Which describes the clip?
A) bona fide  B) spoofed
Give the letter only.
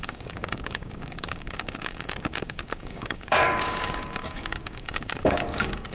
B